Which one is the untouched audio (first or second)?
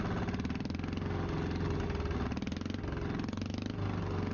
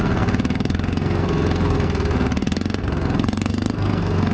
first